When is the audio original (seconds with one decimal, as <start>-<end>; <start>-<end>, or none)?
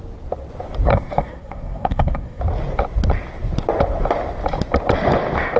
0.0-0.9; 2.4-5.6